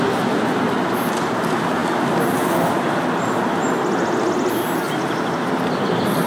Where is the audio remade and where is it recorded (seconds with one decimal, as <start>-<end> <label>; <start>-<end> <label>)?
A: 0.0-6.3 recorded